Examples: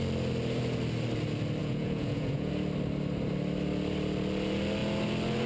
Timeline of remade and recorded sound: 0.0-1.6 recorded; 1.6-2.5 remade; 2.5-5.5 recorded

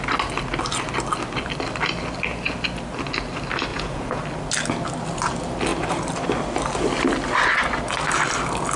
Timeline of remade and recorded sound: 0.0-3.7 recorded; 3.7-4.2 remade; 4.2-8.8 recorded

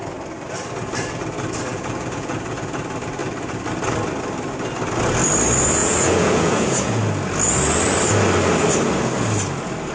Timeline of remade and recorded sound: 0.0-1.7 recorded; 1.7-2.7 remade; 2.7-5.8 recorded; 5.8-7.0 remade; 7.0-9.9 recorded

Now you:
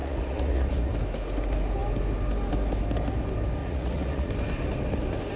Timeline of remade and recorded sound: 0.0-0.9 remade; 0.9-3.6 recorded; 3.6-4.3 remade; 4.3-5.4 recorded

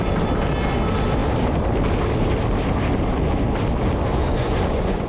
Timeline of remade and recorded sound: 0.0-4.2 recorded; 4.2-5.1 remade